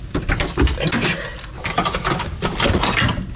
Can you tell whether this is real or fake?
real